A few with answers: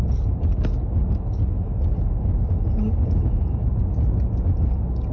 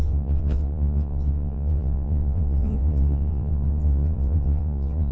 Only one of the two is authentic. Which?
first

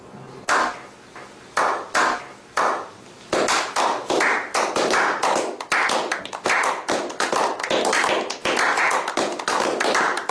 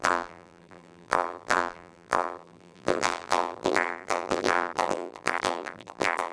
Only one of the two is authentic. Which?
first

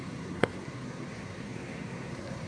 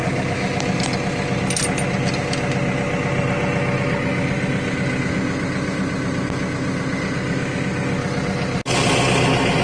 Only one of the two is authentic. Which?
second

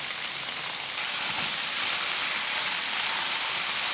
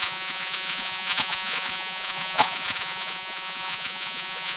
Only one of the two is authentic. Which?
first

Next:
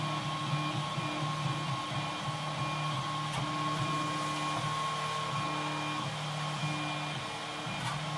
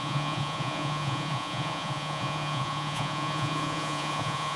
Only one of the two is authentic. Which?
first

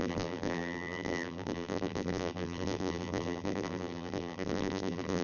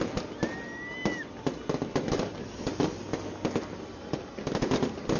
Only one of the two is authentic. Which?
second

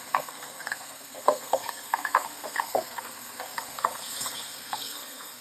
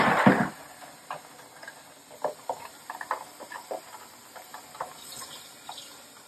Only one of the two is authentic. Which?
second